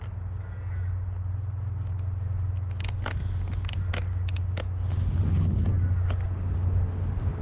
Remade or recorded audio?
recorded